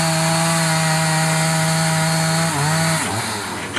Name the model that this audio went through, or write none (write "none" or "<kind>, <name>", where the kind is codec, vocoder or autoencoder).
none